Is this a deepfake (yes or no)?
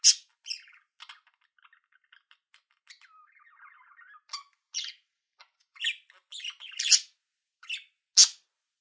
no